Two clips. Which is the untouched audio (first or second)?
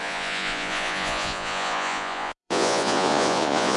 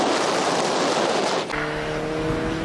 second